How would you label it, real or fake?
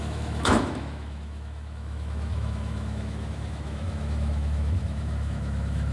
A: fake